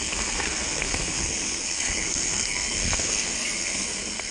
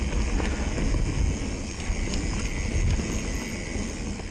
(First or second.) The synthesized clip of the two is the first